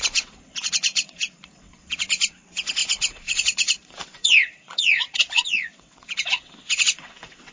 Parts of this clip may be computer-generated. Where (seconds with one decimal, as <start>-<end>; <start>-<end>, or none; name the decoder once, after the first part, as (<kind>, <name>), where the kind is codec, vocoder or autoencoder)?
0.0-7.5 (vocoder, WaveNeXt)